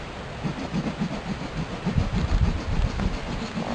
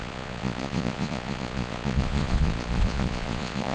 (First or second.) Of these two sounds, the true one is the first